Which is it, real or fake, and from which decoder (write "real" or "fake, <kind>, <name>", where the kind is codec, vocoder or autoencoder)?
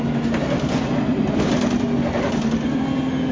real